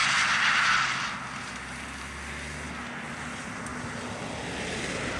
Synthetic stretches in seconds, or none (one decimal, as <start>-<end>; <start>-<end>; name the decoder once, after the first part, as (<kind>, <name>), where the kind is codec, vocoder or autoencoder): none